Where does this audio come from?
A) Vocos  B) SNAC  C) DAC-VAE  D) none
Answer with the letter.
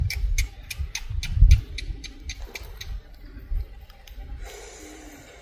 D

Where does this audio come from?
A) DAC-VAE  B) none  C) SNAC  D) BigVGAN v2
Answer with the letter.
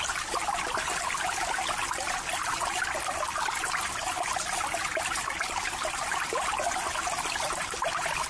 B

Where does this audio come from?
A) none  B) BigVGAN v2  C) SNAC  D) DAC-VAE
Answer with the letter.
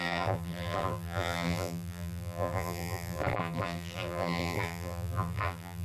B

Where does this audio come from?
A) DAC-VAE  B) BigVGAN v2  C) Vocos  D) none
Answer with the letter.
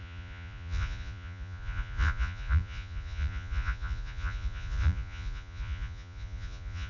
C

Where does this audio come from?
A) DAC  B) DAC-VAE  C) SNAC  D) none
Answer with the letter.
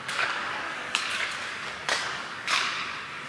A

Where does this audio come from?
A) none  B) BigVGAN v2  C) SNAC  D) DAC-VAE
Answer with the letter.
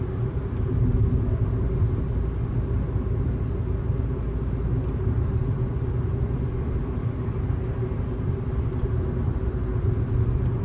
A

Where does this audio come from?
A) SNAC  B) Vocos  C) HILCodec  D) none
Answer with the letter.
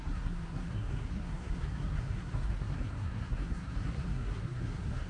A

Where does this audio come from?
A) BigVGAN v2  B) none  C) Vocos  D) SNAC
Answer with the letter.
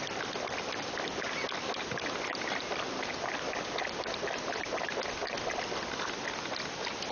B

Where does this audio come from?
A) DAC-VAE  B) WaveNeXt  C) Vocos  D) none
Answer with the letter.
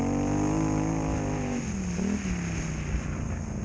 D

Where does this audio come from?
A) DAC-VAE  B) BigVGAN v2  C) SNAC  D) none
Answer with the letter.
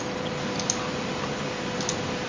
D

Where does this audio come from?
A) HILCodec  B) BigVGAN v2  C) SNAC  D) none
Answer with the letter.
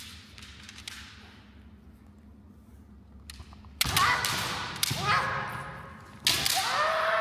D